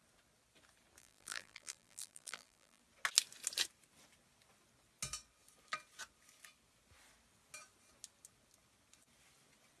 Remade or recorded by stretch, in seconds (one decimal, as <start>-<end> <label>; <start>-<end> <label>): 0.0-1.0 recorded; 1.0-2.8 remade; 2.8-9.8 recorded

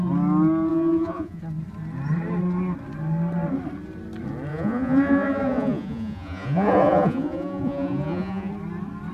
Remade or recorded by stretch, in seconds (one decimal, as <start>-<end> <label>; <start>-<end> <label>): 0.0-0.7 recorded; 0.7-1.4 remade; 1.4-4.5 recorded; 4.5-8.5 remade; 8.5-9.1 recorded

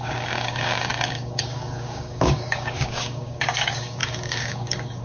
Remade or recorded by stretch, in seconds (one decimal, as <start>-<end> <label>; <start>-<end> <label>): 0.0-5.0 remade

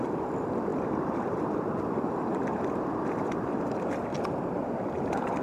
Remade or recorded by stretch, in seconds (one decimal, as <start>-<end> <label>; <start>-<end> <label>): 0.0-4.1 remade; 4.1-4.6 recorded; 4.6-5.4 remade

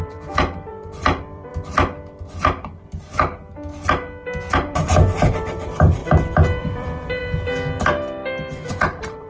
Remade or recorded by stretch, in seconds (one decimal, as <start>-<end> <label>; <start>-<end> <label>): 0.0-1.5 remade; 1.5-4.5 recorded; 4.5-6.0 remade; 6.0-6.6 recorded; 6.6-7.2 remade; 7.2-8.5 recorded; 8.5-9.3 remade

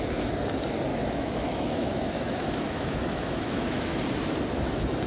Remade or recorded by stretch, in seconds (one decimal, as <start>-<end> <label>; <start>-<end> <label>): 0.0-0.9 recorded; 0.9-4.0 remade; 4.0-5.1 recorded

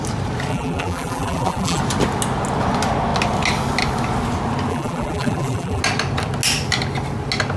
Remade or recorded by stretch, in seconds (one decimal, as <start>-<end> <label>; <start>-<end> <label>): 0.0-0.5 recorded; 0.5-1.8 remade; 1.8-4.7 recorded; 4.7-5.8 remade; 5.8-7.6 recorded

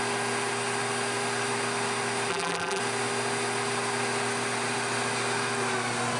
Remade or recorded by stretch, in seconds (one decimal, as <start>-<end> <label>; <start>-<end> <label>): 0.0-2.3 recorded; 2.3-2.8 remade; 2.8-6.2 recorded